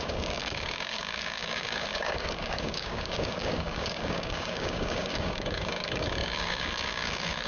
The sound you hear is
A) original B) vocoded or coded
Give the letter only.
B